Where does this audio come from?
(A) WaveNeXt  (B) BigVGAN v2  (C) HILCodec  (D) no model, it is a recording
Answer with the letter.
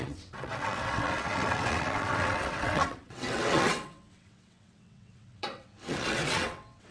A